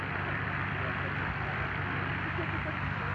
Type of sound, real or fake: fake